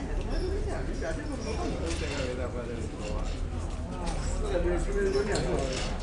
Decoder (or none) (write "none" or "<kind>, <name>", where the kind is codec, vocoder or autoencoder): none